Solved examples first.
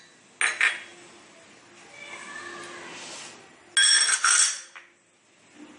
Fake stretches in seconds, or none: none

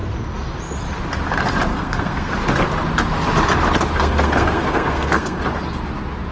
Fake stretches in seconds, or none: 1.7-2.3 (codec, SNAC); 4.0-5.4